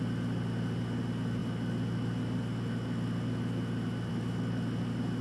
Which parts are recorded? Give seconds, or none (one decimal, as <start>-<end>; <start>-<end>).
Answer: 0.0-5.2